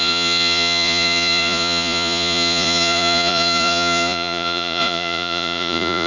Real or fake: fake